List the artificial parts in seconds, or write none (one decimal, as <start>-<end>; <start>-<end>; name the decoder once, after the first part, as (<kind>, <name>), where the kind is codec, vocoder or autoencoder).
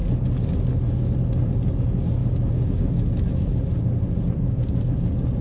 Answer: none